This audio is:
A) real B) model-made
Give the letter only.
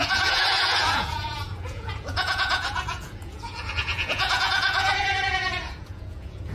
B